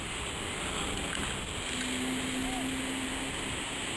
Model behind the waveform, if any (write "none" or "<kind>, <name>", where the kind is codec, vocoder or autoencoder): none